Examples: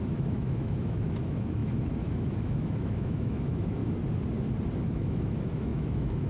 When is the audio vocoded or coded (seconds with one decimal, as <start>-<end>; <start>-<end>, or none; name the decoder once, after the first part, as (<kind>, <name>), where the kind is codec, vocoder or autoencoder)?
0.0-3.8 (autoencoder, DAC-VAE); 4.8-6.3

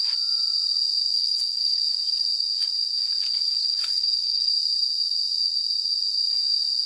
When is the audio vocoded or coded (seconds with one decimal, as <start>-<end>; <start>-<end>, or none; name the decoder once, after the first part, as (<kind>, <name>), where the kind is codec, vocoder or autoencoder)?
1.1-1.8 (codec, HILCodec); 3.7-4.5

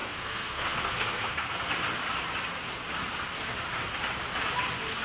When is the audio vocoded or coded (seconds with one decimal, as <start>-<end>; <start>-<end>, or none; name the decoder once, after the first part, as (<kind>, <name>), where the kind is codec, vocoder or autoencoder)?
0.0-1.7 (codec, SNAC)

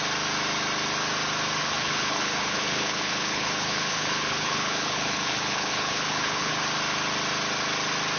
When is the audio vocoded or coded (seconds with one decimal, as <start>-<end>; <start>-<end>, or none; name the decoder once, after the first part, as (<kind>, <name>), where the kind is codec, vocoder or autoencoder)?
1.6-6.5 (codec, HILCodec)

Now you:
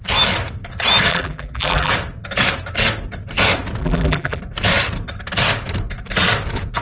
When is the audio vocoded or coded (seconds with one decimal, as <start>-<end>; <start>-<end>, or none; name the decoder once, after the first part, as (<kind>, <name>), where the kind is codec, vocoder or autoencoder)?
1.1-1.9 (vocoder, BigVGAN v2); 3.8-4.4